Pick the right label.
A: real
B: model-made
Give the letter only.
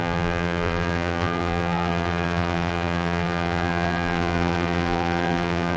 B